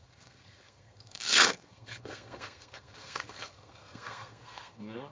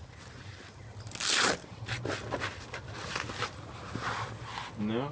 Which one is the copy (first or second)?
first